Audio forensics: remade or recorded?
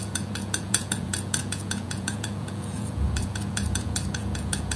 remade